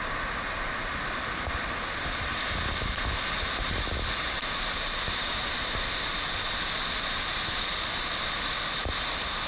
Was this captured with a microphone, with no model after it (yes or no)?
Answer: yes